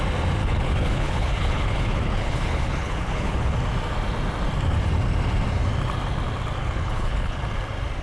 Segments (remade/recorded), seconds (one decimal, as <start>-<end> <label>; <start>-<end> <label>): 0.0-0.4 recorded; 0.4-3.5 remade; 3.5-6.6 recorded; 6.6-7.4 remade; 7.4-8.0 recorded

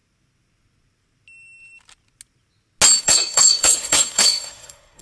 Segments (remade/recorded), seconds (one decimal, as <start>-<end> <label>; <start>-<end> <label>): 0.0-3.0 recorded; 3.0-5.0 remade

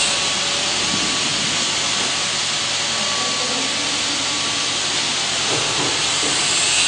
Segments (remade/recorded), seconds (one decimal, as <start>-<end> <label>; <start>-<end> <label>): 0.0-6.9 recorded

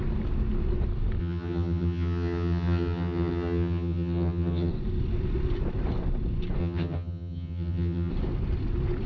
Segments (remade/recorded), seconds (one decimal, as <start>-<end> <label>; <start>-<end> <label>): 0.0-1.2 recorded; 1.2-4.7 remade; 4.7-6.6 recorded; 6.6-8.1 remade; 8.1-9.1 recorded

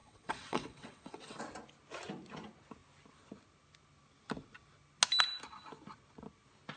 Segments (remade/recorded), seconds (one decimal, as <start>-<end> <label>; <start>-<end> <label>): 0.0-1.4 remade; 1.4-6.8 recorded

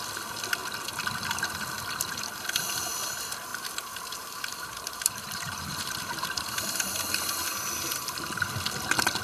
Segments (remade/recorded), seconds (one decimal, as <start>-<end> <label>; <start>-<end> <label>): 0.0-3.5 recorded; 3.5-7.0 remade; 7.0-9.2 recorded